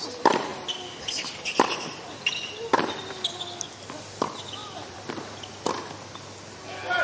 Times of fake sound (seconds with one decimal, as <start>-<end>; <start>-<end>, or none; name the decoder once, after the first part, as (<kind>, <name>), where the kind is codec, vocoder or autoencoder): 4.6-5.1 (vocoder, BigVGAN v2)